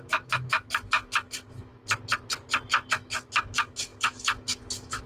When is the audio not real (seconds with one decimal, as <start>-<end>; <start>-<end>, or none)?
0.0-1.8; 2.9-5.1